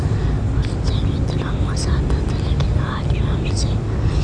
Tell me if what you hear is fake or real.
real